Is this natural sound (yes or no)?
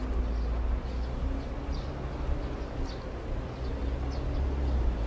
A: yes